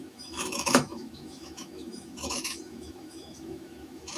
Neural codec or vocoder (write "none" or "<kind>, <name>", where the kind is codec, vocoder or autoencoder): autoencoder, DAC-VAE